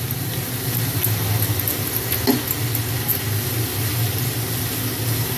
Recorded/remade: recorded